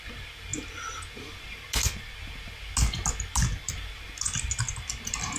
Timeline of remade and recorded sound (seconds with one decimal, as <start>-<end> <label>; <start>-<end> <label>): 0.0-5.4 recorded